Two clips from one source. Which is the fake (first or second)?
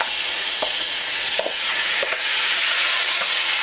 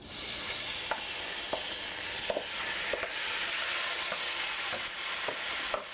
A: first